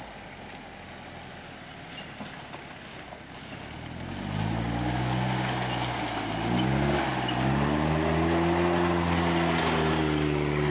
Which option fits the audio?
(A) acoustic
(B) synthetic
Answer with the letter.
A